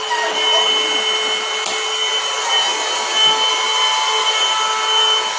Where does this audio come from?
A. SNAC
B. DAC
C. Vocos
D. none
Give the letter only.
D